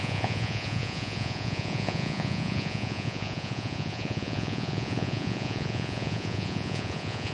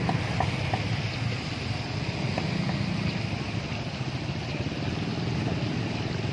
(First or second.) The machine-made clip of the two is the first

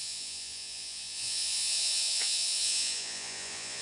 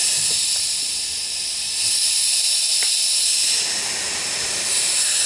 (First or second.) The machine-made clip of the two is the first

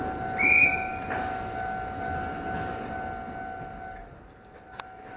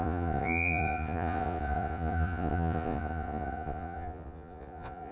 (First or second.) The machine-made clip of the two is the second